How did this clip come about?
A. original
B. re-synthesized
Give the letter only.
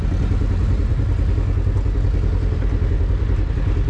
A